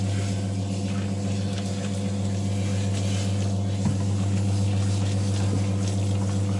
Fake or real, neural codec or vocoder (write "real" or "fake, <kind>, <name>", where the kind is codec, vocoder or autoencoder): real